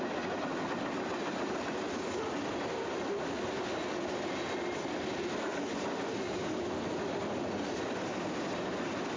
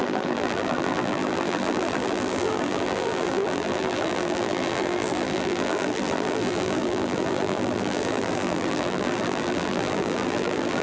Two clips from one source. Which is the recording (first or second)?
first